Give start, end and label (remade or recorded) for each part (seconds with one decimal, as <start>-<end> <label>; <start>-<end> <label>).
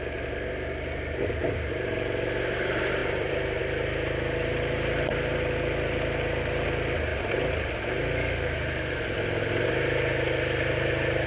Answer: 0.0-3.0 recorded; 3.0-3.6 remade; 3.6-7.1 recorded; 7.1-7.7 remade; 7.7-11.3 recorded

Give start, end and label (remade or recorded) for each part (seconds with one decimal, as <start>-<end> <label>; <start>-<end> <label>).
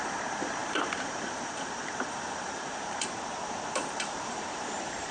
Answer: 0.0-5.1 remade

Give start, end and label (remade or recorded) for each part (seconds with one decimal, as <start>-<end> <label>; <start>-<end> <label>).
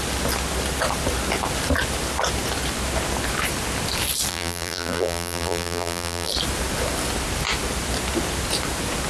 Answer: 0.0-4.3 recorded; 4.3-6.3 remade; 6.3-9.1 recorded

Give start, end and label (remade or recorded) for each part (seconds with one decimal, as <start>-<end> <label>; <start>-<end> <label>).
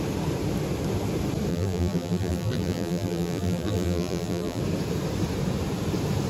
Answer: 0.0-1.5 recorded; 1.5-4.6 remade; 4.6-6.3 recorded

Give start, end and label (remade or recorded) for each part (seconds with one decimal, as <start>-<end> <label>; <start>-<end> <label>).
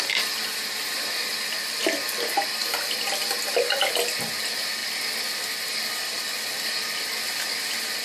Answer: 0.0-0.5 recorded; 0.5-1.3 remade; 1.3-8.0 recorded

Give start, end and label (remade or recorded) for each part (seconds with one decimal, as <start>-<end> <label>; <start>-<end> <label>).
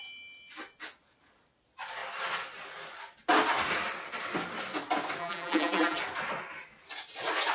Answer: 0.0-5.2 recorded; 5.2-6.0 remade; 6.0-7.5 recorded